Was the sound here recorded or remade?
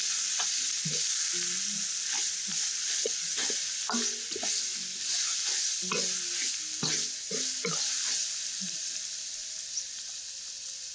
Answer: recorded